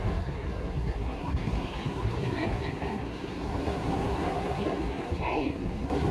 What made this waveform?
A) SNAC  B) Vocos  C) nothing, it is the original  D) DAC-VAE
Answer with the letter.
A